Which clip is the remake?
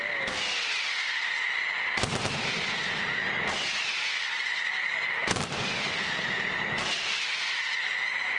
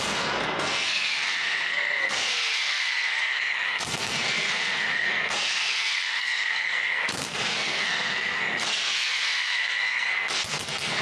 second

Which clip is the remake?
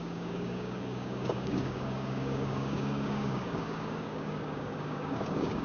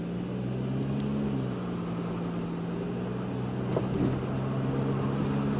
first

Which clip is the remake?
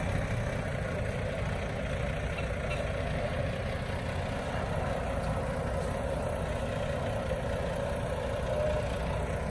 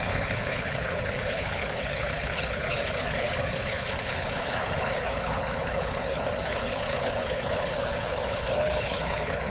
second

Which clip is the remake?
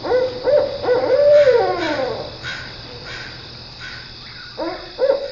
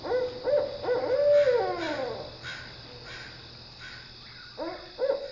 first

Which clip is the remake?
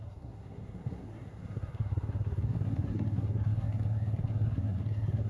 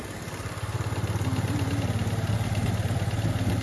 first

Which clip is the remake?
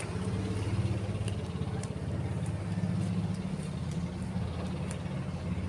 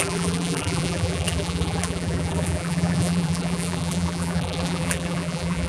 second